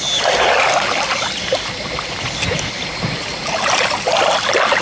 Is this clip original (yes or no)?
yes